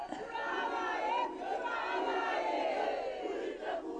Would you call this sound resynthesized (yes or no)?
no